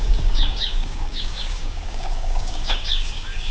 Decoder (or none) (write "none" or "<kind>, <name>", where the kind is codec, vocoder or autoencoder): codec, DAC